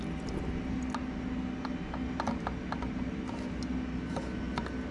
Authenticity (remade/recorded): recorded